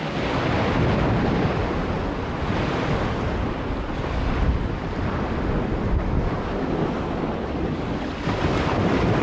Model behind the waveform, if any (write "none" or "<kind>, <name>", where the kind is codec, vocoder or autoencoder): none